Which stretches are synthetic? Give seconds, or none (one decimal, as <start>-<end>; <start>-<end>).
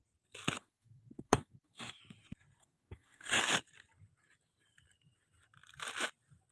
0.6-2.0; 2.6-3.4